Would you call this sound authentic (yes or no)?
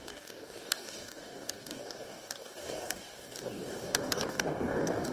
no